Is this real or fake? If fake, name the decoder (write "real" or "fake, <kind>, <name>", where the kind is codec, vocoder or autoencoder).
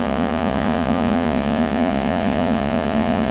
fake, vocoder, Vocos